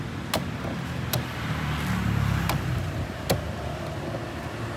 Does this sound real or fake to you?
real